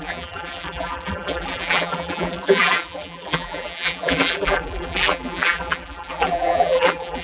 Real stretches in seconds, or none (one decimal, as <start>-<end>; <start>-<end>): none